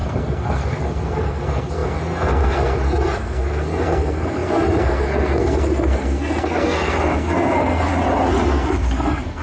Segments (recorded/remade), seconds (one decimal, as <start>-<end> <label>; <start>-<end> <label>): 0.0-7.9 remade; 7.9-8.5 recorded; 8.5-9.4 remade